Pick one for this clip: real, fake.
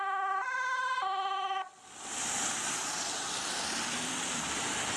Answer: fake